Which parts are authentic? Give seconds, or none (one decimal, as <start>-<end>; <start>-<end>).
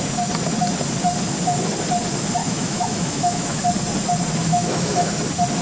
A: 0.0-2.4; 3.6-4.4; 5.1-5.6